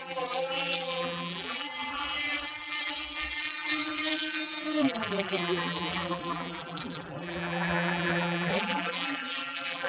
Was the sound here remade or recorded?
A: remade